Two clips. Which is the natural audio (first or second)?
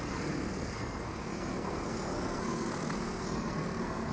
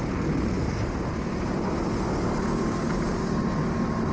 second